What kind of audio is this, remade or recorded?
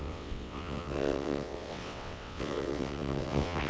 remade